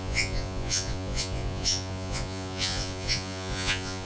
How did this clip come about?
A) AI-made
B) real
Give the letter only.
A